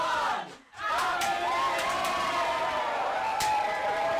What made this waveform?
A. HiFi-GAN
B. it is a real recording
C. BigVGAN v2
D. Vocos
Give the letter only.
C